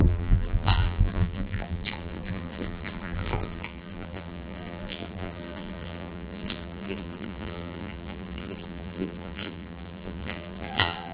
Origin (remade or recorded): remade